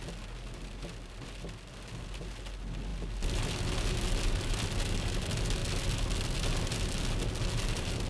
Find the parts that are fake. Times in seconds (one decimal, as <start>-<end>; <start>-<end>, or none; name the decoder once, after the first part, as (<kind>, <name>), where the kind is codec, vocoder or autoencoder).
none